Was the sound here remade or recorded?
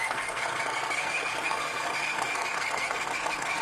remade